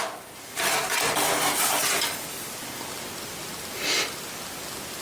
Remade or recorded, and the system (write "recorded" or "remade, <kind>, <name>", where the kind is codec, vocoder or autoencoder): recorded